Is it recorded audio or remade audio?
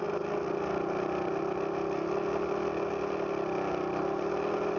recorded